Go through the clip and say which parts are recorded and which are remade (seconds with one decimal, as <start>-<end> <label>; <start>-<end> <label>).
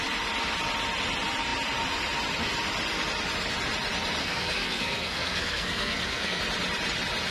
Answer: 0.0-4.2 recorded; 4.2-6.4 remade; 6.4-7.3 recorded